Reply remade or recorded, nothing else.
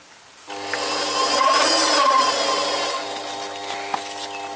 recorded